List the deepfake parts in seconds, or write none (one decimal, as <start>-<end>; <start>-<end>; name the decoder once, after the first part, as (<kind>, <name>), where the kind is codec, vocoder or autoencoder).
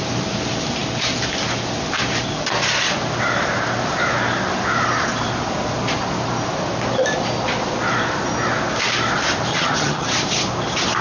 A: 9.5-10.1 (vocoder, HiFi-GAN)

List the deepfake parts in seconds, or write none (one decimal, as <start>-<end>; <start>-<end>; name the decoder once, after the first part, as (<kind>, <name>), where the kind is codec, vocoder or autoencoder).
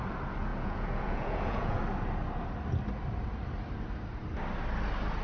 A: 0.5-1.8 (vocoder, Vocos)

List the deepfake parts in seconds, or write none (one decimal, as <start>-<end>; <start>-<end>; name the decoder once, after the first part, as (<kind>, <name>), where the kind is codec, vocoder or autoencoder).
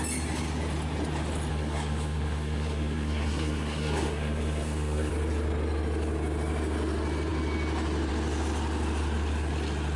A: 1.5-5.1 (codec, SNAC)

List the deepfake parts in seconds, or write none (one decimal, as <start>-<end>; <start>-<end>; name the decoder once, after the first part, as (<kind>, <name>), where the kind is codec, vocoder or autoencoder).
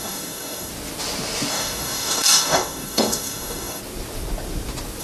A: 0.0-0.7 (codec, DAC); 1.5-3.8